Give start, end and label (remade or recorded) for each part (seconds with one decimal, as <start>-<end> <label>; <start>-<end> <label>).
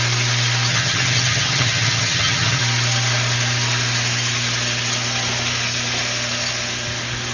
0.0-0.7 recorded; 0.7-2.6 remade; 2.6-7.3 recorded